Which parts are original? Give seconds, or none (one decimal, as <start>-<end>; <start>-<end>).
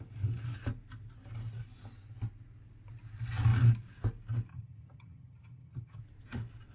0.0-4.5; 6.0-6.7